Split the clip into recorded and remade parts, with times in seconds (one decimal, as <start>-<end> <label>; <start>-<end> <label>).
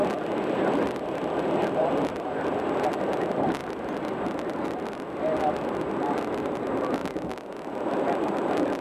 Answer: 0.0-7.0 remade; 7.0-8.0 recorded; 8.0-8.8 remade